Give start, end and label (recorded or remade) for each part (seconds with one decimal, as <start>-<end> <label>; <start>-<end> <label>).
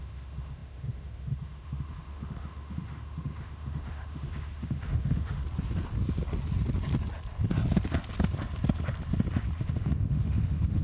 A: 0.0-5.4 remade; 5.4-9.6 recorded; 9.6-10.8 remade